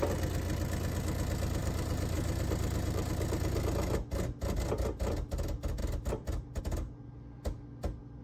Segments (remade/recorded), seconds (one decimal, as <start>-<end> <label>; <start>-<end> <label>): 0.0-1.6 recorded; 1.6-3.1 remade; 3.1-8.2 recorded